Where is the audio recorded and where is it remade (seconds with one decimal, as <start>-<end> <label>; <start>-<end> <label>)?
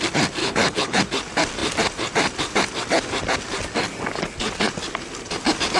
0.0-0.4 recorded; 0.4-1.0 remade; 1.0-5.8 recorded